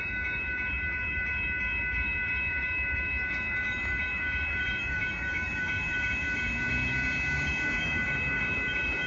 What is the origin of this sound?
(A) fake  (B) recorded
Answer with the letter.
A